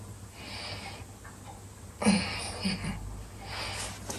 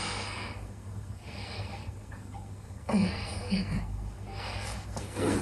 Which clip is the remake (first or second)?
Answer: second